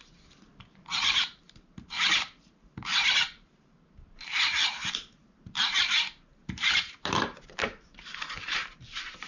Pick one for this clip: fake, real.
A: fake